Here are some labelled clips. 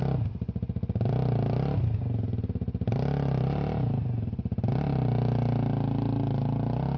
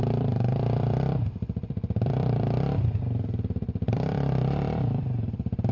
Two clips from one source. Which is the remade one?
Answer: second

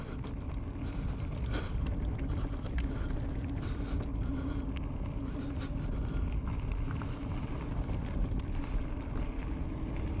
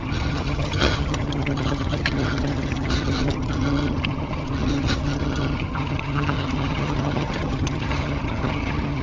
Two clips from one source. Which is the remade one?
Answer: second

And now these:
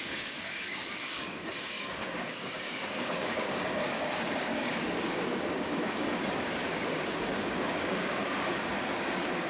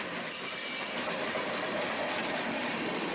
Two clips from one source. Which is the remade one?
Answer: first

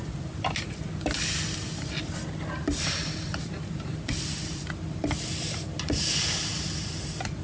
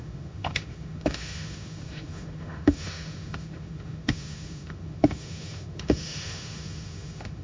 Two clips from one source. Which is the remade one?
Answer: second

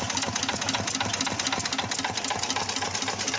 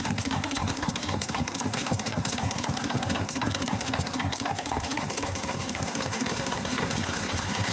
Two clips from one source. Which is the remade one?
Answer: second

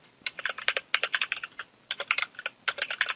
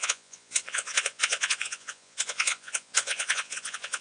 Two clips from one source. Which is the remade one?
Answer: second